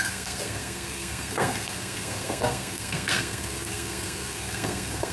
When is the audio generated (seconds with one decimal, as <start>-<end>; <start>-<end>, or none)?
0.0-5.1